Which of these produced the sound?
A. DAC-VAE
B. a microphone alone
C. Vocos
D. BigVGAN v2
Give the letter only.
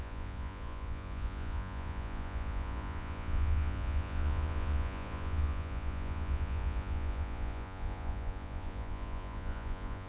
C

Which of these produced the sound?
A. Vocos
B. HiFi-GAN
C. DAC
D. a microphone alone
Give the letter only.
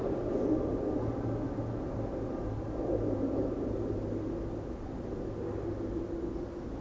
D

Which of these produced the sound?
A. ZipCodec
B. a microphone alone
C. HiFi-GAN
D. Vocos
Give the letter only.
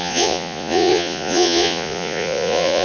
D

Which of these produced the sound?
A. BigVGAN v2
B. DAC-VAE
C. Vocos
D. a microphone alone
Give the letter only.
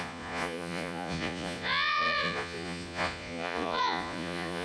C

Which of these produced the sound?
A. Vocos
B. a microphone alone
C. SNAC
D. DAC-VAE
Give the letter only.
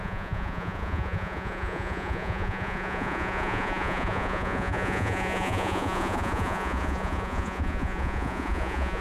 A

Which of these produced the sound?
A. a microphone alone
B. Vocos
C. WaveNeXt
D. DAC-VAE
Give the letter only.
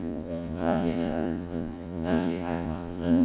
B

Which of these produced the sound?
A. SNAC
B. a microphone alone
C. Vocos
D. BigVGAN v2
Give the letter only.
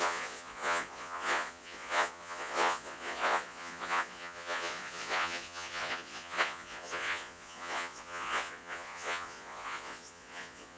C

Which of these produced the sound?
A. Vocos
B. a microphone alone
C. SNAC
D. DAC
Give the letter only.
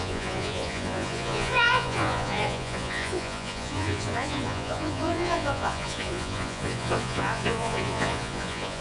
A